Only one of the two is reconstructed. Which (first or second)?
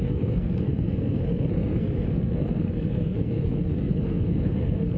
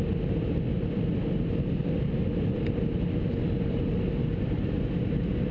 first